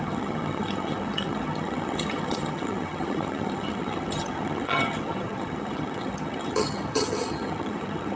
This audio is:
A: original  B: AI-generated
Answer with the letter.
B